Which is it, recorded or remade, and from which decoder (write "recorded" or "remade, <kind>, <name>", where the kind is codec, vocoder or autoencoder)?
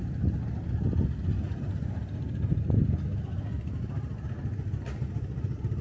recorded